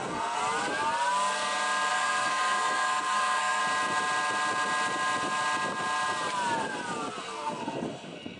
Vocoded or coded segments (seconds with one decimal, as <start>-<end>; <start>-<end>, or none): 0.0-0.4; 1.9-3.6; 7.2-8.4